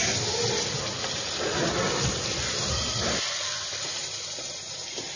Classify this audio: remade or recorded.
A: recorded